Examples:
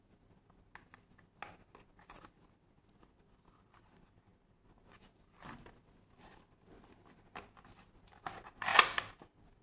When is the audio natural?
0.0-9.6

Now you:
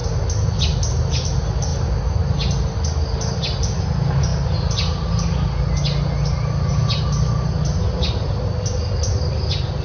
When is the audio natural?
0.0-9.8

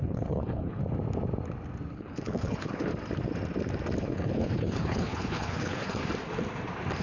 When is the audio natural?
0.8-1.9; 2.9-4.0; 6.0-7.0

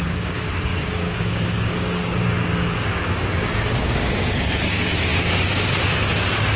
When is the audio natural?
none

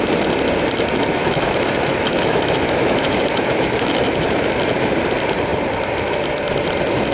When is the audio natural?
0.0-1.2; 4.5-7.1

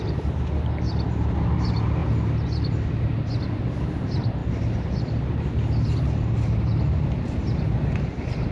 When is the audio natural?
0.0-8.5